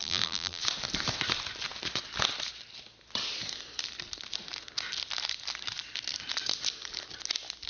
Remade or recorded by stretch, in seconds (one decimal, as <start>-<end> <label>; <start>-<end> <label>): 0.0-0.6 remade; 0.6-7.7 recorded